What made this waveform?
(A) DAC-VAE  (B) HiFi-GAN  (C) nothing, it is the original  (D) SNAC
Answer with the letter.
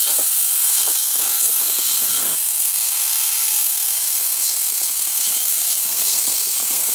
D